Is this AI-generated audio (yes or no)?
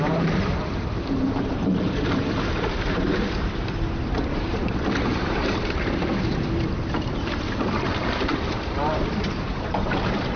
yes